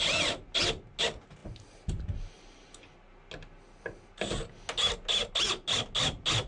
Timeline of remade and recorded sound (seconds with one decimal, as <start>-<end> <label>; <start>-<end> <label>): 0.0-6.5 recorded